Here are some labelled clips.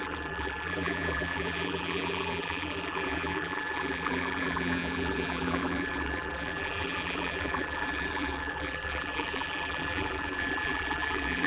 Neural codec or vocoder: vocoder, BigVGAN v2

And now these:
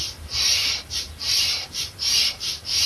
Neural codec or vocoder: vocoder, BigVGAN v2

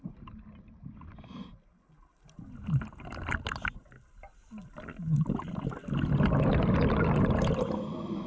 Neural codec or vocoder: none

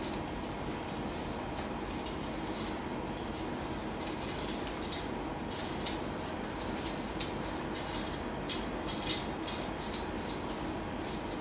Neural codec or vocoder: none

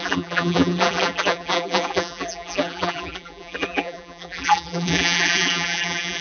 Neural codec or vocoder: vocoder, BigVGAN v2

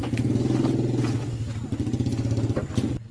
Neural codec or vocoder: none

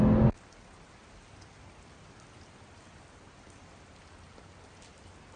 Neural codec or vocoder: none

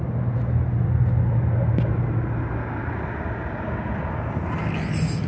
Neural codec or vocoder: none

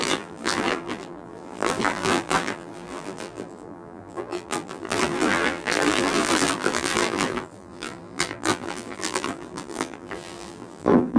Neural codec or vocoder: vocoder, BigVGAN v2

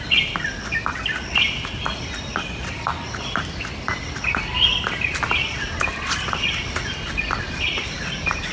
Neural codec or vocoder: none